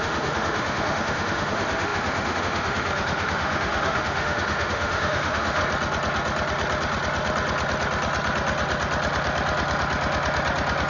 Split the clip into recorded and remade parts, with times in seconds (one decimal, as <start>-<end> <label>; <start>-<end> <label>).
0.0-5.6 remade; 5.6-10.9 recorded